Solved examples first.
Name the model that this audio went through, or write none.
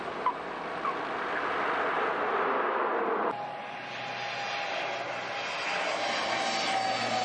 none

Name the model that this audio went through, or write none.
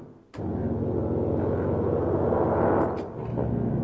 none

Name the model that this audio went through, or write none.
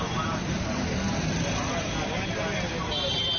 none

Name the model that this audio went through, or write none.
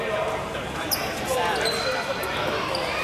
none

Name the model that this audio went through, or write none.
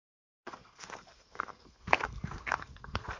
codec, SNAC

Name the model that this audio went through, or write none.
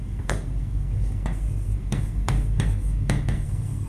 codec, SNAC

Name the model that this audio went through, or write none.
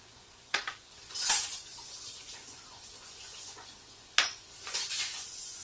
vocoder, Vocos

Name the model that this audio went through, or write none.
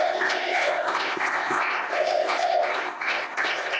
codec, ZipCodec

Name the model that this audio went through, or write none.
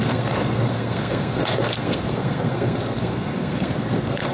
codec, SNAC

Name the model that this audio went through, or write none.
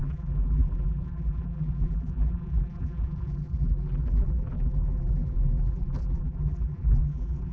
vocoder, BigVGAN v2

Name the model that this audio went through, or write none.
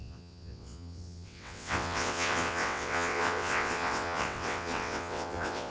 vocoder, WaveNeXt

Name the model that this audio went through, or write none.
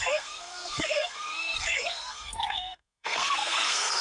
codec, SNAC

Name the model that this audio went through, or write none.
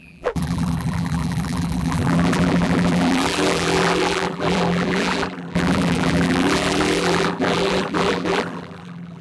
vocoder, BigVGAN v2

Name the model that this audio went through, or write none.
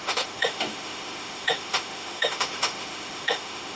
autoencoder, DAC-VAE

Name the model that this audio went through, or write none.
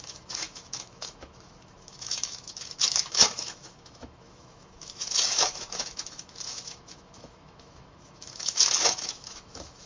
autoencoder, DAC-VAE